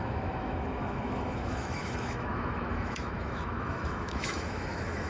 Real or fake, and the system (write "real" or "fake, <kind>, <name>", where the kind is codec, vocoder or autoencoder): fake, autoencoder, DAC-VAE